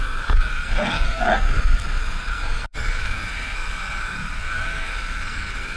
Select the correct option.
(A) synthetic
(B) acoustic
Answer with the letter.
A